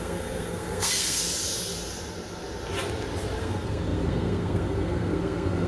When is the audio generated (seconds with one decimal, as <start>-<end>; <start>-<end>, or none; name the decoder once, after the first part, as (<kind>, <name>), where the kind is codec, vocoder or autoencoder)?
0.0-1.2 (codec, SNAC); 3.4-5.7